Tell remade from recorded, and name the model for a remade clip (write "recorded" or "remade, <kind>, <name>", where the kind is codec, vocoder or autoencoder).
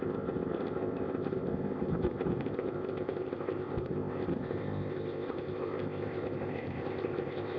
remade, codec, ZipCodec